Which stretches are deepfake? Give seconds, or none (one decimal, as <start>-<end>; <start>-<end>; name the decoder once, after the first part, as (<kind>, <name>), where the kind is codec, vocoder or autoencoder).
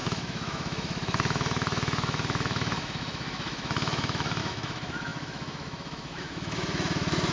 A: 0.0-7.3 (autoencoder, DAC-VAE)